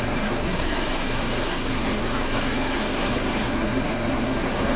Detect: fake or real fake